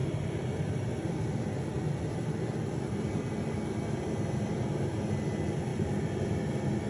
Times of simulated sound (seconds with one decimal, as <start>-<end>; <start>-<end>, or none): 0.0-3.6